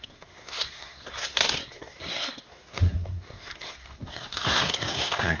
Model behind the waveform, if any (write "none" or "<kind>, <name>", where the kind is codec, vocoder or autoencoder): codec, SNAC